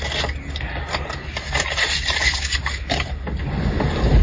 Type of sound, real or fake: real